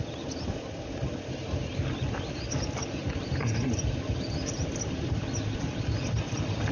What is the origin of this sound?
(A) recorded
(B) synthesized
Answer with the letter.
A